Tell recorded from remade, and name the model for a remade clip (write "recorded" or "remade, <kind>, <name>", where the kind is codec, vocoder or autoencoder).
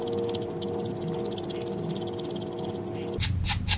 recorded